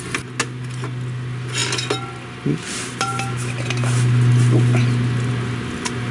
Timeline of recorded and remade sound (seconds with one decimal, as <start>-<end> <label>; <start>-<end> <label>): 0.0-6.1 recorded